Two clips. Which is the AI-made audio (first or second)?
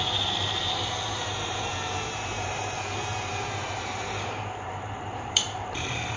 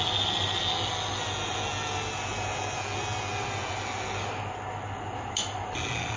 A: first